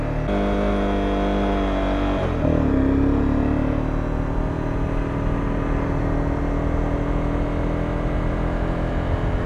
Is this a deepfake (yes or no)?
no